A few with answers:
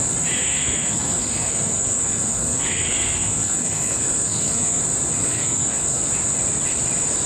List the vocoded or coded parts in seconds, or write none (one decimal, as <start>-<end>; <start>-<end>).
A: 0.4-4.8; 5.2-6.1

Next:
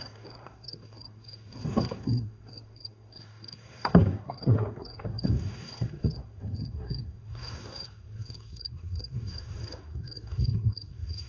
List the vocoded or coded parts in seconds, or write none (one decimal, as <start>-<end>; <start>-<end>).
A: 0.0-11.3

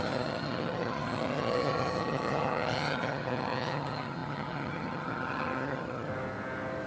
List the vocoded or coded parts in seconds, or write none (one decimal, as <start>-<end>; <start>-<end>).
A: 0.0-6.1

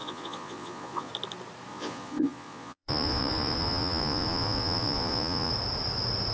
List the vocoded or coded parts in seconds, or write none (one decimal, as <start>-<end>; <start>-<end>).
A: 0.0-1.1; 1.7-5.5

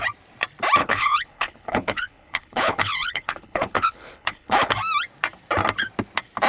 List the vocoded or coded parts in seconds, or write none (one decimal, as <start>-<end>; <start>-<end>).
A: 0.8-4.7